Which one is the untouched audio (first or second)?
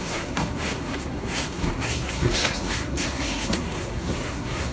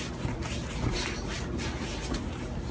second